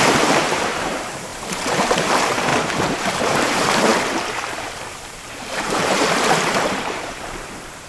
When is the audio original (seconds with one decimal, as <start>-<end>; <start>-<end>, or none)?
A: none